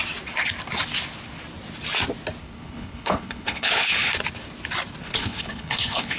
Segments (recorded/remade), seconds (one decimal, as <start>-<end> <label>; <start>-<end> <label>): 0.0-2.4 recorded; 2.4-4.1 remade; 4.1-5.0 recorded; 5.0-6.2 remade